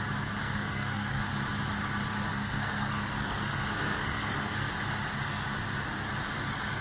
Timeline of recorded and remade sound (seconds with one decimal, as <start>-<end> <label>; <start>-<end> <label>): 0.0-0.4 recorded; 0.4-1.3 remade; 1.3-2.3 recorded; 2.3-4.7 remade; 4.7-6.8 recorded